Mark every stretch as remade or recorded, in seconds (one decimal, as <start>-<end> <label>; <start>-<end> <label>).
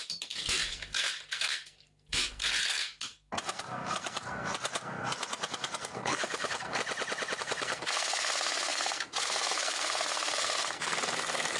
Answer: 0.0-6.8 remade; 6.8-7.4 recorded; 7.4-11.6 remade